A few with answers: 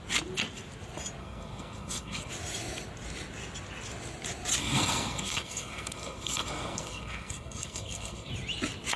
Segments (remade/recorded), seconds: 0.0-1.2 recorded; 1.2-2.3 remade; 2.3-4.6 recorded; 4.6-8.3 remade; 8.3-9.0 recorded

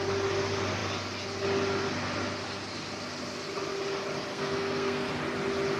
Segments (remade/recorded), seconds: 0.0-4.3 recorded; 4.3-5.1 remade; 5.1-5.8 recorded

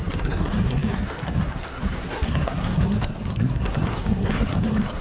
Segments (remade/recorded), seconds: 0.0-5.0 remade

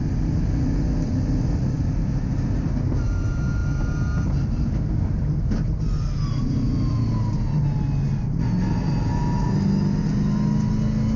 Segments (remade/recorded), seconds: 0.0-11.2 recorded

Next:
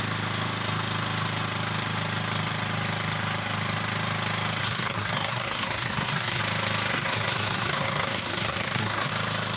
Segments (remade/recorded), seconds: 0.0-4.6 recorded; 4.6-6.4 remade; 6.4-6.9 recorded; 6.9-9.1 remade; 9.1-9.6 recorded

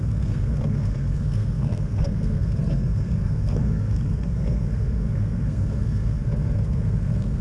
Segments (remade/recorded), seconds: 0.0-7.4 remade

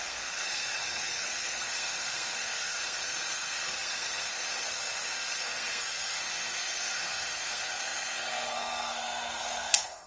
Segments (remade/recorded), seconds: 0.0-10.1 remade